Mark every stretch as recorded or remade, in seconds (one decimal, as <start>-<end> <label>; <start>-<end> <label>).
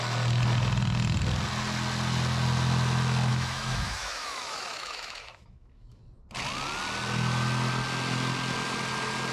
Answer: 0.0-3.3 recorded; 3.3-6.0 remade; 6.0-9.3 recorded